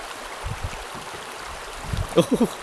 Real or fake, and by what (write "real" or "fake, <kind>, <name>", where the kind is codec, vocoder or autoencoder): real